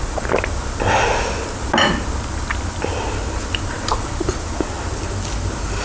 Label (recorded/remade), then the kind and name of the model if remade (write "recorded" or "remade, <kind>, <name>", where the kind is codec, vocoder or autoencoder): recorded